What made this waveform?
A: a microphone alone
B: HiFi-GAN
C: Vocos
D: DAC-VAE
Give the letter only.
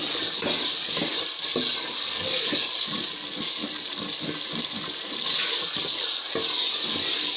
A